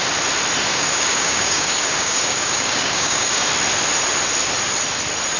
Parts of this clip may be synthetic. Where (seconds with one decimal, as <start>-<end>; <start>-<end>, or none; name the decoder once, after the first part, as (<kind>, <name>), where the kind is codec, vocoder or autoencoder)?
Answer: 0.7-3.5 (codec, DAC)